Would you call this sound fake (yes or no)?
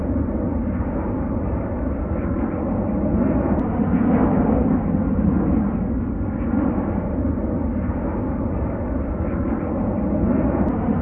no